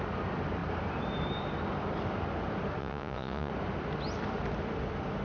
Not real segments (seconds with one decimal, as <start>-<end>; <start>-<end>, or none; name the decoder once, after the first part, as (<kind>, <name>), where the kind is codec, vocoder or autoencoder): 2.8-3.5 (vocoder, Vocos)